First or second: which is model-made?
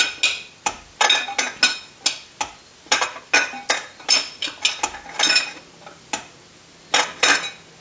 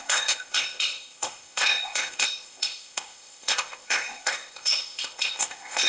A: second